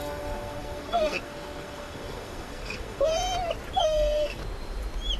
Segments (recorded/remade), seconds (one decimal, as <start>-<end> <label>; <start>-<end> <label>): 0.0-3.1 remade; 3.1-3.8 recorded; 3.8-4.4 remade; 4.4-5.2 recorded